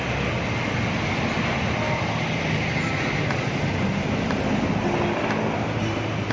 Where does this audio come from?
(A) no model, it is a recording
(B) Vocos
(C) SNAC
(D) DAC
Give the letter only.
A